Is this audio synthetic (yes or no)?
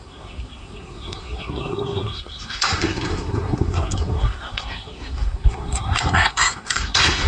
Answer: yes